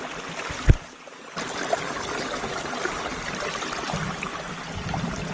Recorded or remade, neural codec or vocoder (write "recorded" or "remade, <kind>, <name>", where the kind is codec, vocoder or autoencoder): recorded